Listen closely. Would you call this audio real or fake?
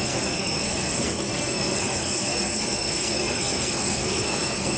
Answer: fake